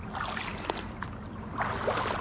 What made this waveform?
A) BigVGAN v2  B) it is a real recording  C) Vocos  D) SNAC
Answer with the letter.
B